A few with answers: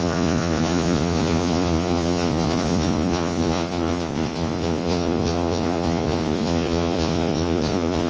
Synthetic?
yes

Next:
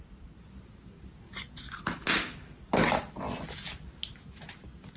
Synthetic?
no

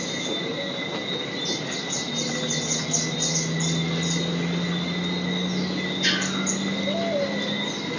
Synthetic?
no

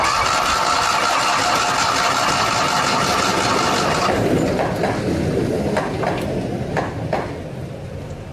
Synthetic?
no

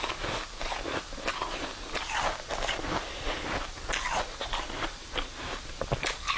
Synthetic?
no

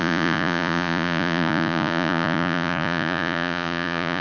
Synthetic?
yes